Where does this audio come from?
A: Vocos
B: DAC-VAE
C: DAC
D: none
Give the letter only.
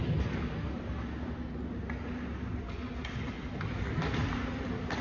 D